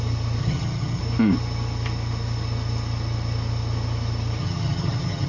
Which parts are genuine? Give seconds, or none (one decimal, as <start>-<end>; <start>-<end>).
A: 0.0-0.4; 1.0-4.4